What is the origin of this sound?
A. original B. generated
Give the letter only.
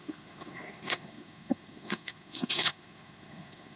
B